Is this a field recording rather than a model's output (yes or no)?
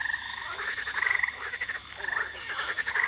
no